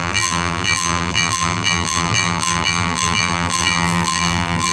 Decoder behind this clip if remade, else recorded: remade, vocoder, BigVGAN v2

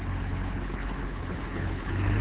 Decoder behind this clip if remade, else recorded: remade, codec, HILCodec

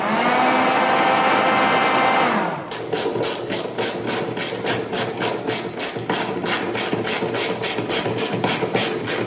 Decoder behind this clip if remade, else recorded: recorded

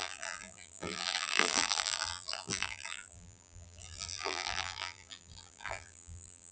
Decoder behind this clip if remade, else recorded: remade, vocoder, BigVGAN v2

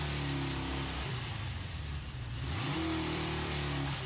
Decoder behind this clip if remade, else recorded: remade, vocoder, BigVGAN v2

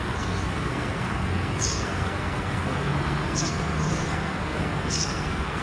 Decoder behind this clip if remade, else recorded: remade, codec, SNAC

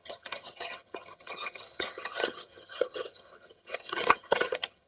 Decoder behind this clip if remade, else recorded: remade, vocoder, HiFi-GAN